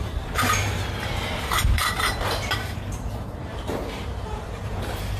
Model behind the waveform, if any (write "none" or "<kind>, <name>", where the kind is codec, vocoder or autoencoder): vocoder, BigVGAN v2